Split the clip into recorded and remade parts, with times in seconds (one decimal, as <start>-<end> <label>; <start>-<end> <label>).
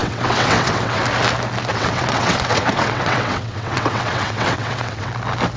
0.0-1.0 remade; 1.0-1.7 recorded; 1.7-5.1 remade; 5.1-5.6 recorded